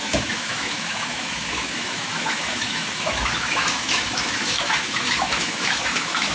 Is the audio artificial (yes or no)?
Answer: yes